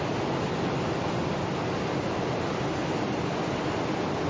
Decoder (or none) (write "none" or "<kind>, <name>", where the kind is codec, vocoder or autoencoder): none